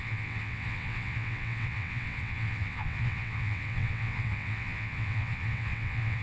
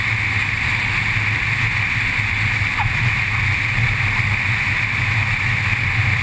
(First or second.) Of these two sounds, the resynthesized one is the first